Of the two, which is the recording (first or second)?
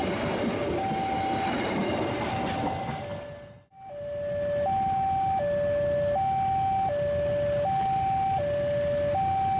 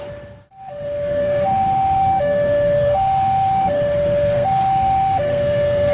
first